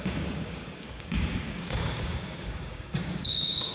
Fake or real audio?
fake